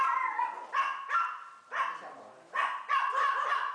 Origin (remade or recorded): recorded